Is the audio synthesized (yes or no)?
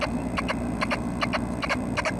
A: no